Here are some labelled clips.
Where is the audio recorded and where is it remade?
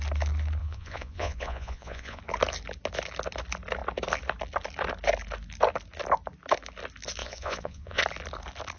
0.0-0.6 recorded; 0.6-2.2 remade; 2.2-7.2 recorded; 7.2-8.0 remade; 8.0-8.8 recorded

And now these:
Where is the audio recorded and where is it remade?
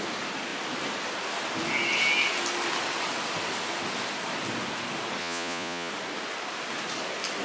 0.0-5.2 recorded; 5.2-5.9 remade; 5.9-7.4 recorded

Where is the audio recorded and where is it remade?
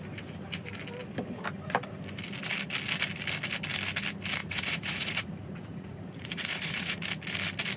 0.0-4.4 recorded; 4.4-7.0 remade; 7.0-7.8 recorded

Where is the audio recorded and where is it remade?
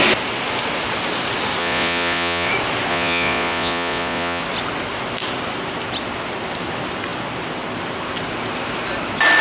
0.0-1.6 recorded; 1.6-2.5 remade; 2.5-2.9 recorded; 2.9-4.4 remade; 4.4-9.4 recorded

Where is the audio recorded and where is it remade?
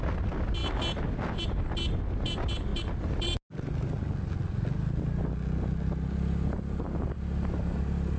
0.0-8.2 recorded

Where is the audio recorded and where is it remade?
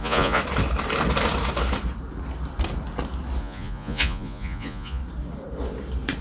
0.0-0.4 remade; 0.4-3.4 recorded; 3.4-5.0 remade; 5.0-6.2 recorded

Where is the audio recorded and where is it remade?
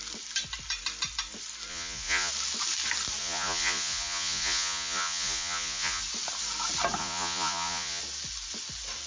0.0-1.7 recorded; 1.7-2.3 remade; 2.3-3.2 recorded; 3.2-6.0 remade; 6.0-7.0 recorded; 7.0-8.0 remade; 8.0-9.1 recorded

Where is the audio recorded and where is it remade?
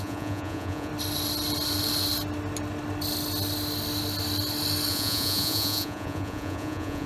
0.0-0.9 remade; 0.9-4.9 recorded; 4.9-7.1 remade